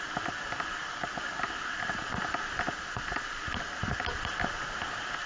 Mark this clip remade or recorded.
recorded